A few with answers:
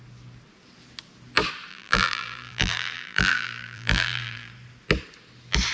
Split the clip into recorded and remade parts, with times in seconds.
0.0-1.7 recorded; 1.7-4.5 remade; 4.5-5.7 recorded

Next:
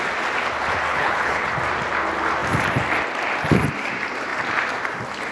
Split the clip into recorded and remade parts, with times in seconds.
0.0-0.9 recorded; 0.9-1.5 remade; 1.5-5.3 recorded

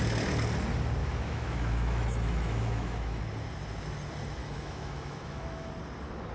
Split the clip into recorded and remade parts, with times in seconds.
0.0-1.0 recorded; 1.0-3.2 remade; 3.2-4.4 recorded; 4.4-5.7 remade; 5.7-6.3 recorded